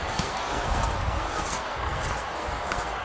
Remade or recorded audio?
remade